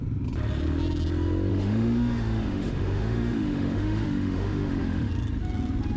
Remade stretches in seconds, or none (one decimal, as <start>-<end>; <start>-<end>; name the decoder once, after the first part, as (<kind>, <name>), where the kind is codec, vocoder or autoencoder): 1.5-5.1 (autoencoder, DAC-VAE)

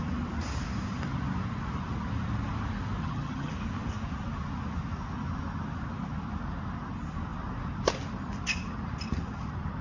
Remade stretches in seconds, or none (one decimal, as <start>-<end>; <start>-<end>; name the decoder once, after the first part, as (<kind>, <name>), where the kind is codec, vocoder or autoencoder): 3.0-3.5 (vocoder, HiFi-GAN)

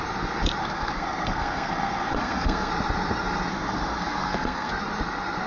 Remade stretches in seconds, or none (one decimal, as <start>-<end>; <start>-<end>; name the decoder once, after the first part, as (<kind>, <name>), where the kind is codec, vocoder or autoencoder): 0.6-2.7 (codec, SNAC); 3.5-4.7

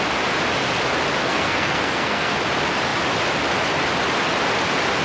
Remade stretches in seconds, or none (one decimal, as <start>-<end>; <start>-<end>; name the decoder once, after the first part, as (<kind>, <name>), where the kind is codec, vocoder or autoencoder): 1.2-2.4 (codec, SNAC)

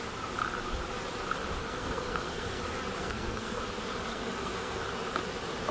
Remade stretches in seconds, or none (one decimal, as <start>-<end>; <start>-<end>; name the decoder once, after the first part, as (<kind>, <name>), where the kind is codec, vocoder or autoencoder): 1.6-2.6 (codec, SNAC); 3.0-3.6; 4.1-4.8